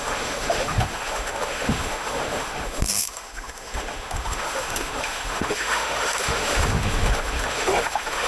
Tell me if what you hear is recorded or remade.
remade